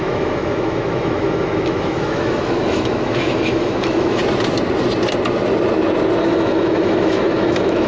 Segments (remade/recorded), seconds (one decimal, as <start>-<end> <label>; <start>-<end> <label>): 0.0-4.2 remade; 4.2-6.2 recorded; 6.2-7.9 remade